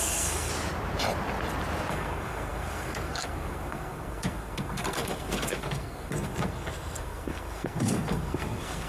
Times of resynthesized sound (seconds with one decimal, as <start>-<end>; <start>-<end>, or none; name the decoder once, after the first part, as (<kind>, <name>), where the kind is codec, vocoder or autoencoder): 0.0-0.5 (codec, SNAC); 1.9-8.9